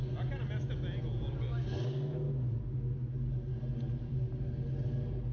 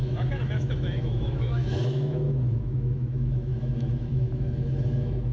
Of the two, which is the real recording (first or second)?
first